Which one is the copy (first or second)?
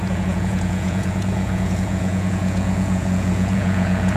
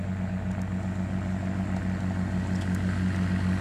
first